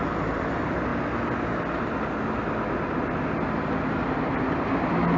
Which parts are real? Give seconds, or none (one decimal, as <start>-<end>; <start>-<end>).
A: 0.9-4.0